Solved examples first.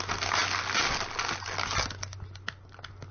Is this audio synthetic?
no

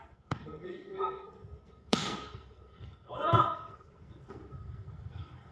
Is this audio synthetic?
yes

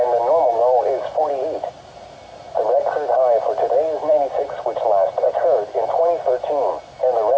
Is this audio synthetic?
no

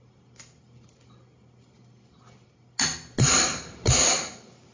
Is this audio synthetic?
no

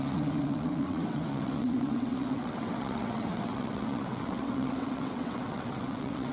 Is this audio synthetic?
yes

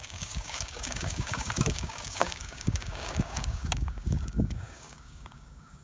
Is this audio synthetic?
yes